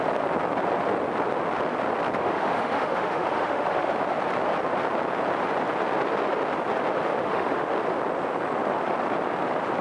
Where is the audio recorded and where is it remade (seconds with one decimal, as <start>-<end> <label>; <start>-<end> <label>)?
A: 0.0-2.2 recorded; 2.2-3.9 remade; 3.9-7.2 recorded; 7.2-7.7 remade; 7.7-9.8 recorded